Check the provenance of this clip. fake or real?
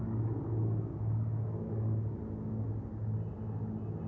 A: real